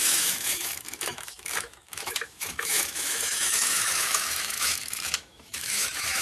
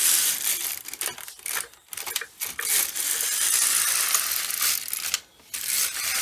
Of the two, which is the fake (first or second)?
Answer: first